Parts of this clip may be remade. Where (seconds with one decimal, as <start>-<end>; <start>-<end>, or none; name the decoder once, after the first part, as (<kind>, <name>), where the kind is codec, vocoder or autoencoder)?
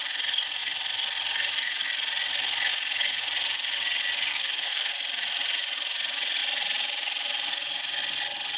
4.3-4.9 (codec, SNAC)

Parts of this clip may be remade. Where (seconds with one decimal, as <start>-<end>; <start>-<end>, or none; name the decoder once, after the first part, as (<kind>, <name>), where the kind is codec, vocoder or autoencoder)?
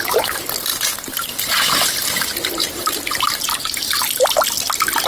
0.7-1.3 (vocoder, BigVGAN v2); 2.6-3.7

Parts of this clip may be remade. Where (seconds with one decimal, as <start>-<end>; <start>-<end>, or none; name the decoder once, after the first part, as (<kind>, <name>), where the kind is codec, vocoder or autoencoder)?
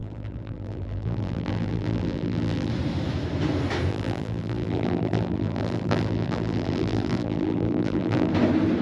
0.0-2.7 (vocoder, BigVGAN v2); 3.9-8.3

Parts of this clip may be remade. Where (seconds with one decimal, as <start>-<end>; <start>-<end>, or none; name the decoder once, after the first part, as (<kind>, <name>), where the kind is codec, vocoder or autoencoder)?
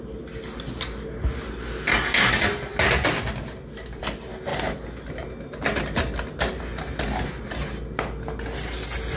none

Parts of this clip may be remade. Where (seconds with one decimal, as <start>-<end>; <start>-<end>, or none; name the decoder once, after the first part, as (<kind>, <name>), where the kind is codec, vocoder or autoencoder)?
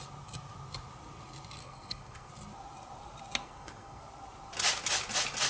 1.6-2.3 (codec, SNAC); 3.4-4.0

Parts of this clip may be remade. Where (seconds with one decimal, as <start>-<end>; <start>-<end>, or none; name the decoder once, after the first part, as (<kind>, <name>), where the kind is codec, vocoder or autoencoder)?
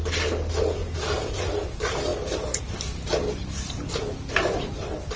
0.8-1.3 (vocoder, Vocos)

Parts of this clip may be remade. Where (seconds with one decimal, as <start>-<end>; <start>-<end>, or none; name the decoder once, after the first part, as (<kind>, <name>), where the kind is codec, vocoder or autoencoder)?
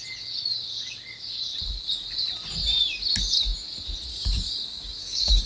4.1-5.5 (codec, DAC)